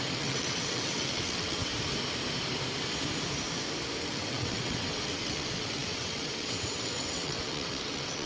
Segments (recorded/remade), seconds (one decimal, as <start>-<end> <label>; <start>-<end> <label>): 0.0-1.7 remade; 1.7-4.0 recorded; 4.0-8.3 remade